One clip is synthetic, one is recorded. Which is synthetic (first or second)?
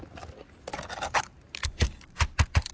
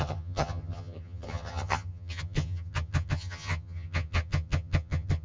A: second